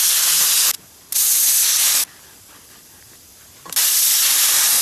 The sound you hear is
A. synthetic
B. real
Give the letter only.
B